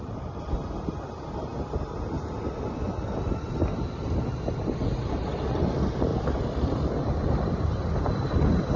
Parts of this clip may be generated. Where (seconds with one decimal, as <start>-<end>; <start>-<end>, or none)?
6.1-8.4